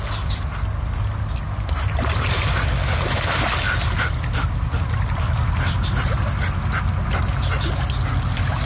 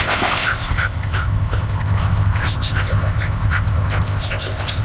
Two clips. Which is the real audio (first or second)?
first